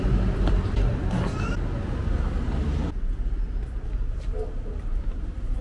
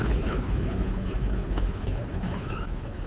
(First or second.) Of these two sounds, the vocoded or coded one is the second